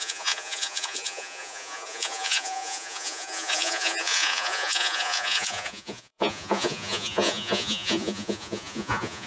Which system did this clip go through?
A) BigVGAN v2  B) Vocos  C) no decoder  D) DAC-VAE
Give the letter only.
B